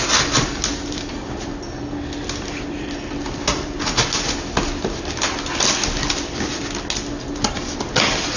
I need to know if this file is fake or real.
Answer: real